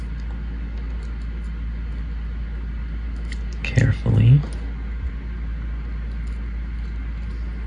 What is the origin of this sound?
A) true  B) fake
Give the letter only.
A